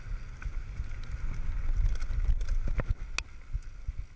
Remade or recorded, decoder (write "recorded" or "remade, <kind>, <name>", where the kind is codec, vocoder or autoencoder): recorded